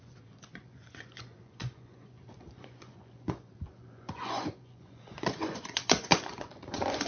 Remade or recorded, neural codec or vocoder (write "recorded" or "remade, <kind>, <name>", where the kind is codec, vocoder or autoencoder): remade, vocoder, Vocos